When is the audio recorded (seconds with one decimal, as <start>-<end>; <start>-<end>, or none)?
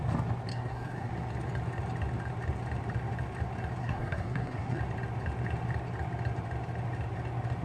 0.0-0.5; 1.1-3.8; 4.8-7.6